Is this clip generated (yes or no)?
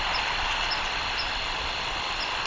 no